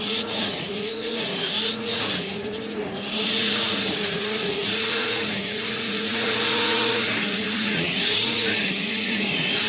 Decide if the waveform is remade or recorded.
remade